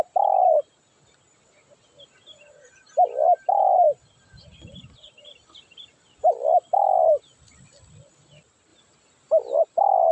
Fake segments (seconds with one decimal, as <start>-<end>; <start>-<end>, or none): 3.3-5.1